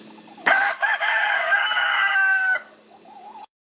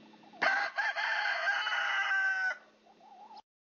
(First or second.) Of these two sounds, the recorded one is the second